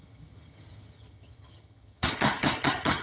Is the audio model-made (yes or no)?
yes